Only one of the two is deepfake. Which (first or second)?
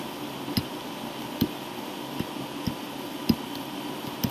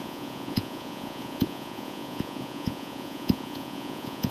second